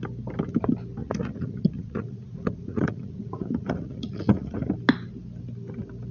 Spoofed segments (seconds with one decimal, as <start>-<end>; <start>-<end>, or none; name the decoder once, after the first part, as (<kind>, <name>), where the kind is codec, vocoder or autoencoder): 1.0-4.7 (vocoder, Vocos)